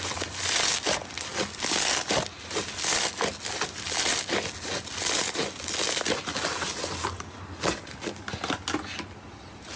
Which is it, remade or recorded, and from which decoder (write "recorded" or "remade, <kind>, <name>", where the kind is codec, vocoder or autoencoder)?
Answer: recorded